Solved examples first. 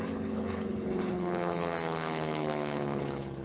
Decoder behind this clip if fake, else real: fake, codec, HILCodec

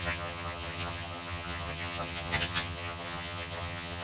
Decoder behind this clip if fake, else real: fake, vocoder, HiFi-GAN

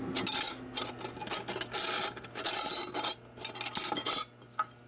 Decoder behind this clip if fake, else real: real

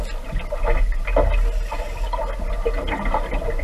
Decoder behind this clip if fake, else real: real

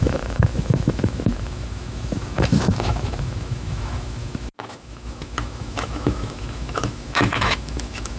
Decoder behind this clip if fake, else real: fake, autoencoder, DAC-VAE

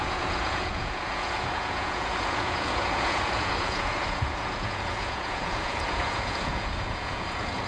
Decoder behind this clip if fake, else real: fake, vocoder, Vocos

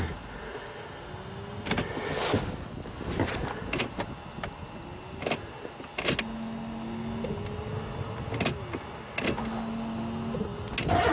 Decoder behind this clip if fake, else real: real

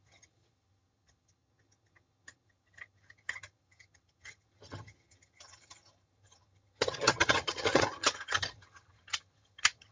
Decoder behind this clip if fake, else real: fake, vocoder, HiFi-GAN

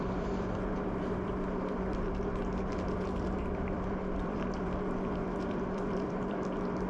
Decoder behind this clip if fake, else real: fake, vocoder, BigVGAN v2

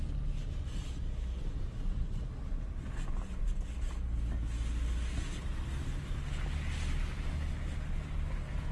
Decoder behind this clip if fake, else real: real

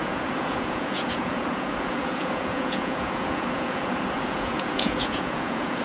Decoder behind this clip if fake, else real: fake, vocoder, Vocos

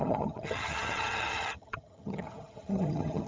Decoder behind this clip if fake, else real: fake, vocoder, HiFi-GAN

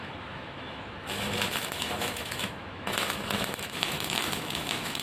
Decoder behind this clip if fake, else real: fake, autoencoder, DAC-VAE